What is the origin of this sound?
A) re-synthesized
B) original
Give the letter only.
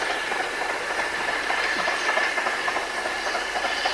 B